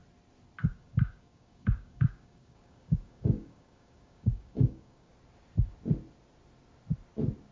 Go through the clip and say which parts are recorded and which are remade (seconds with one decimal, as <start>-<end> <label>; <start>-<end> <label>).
0.0-0.6 recorded; 0.6-5.1 remade; 5.1-7.5 recorded

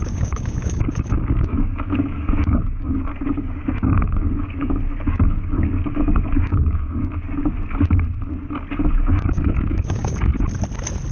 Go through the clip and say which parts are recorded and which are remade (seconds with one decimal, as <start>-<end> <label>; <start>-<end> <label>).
0.0-7.4 remade; 7.4-8.9 recorded; 8.9-10.3 remade; 10.3-11.1 recorded

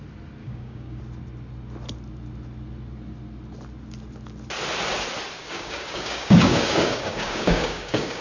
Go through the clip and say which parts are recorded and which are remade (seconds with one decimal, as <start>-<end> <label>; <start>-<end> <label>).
0.0-0.4 recorded; 0.4-1.0 remade; 1.0-5.4 recorded; 5.4-8.2 remade

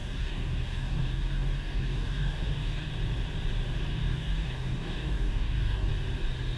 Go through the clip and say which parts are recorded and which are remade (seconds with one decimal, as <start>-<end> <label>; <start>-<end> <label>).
0.0-2.9 remade; 2.9-3.9 recorded; 3.9-5.9 remade; 5.9-6.6 recorded

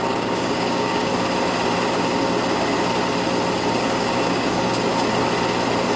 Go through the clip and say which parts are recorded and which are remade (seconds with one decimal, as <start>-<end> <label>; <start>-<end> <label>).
0.0-1.1 remade; 1.1-3.8 recorded; 3.8-4.9 remade; 4.9-6.0 recorded

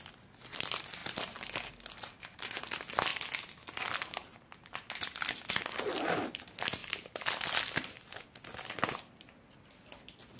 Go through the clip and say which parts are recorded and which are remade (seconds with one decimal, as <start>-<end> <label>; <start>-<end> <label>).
0.0-10.4 recorded